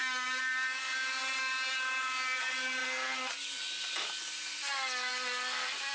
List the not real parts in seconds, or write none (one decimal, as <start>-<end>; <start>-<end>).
none